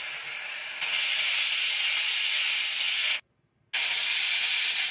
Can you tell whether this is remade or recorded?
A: recorded